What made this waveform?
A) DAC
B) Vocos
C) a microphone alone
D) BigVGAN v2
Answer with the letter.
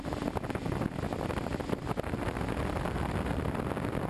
C